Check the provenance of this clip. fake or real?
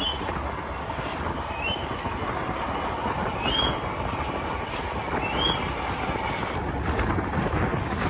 real